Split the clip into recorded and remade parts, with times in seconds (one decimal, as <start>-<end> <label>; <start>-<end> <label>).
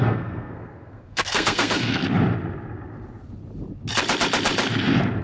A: 0.0-2.0 remade; 2.0-5.2 recorded